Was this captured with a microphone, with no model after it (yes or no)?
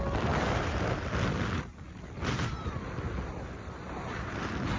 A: yes